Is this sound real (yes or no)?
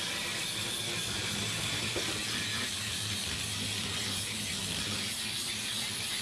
no